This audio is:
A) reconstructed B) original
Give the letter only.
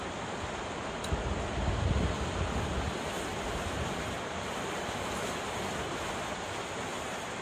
B